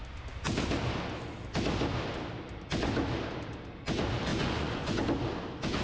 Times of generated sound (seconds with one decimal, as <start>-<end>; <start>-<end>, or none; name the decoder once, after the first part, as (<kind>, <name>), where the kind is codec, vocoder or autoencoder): 4.3-5.0 (vocoder, Vocos)